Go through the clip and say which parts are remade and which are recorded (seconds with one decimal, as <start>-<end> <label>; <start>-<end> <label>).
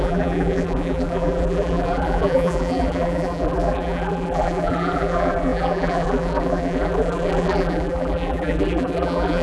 0.0-9.4 remade